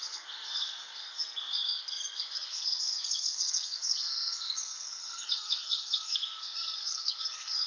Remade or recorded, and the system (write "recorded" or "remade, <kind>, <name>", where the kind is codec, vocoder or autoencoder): remade, codec, SNAC